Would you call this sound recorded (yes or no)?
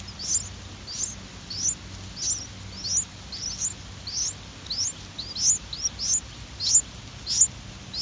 yes